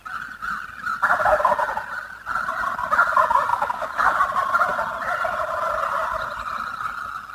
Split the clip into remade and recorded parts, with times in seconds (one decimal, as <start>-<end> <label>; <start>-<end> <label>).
0.0-3.5 recorded; 3.5-4.2 remade; 4.2-7.3 recorded